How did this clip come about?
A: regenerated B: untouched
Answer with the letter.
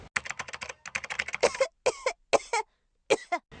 B